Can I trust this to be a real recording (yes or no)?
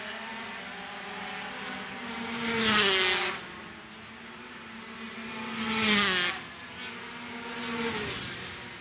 yes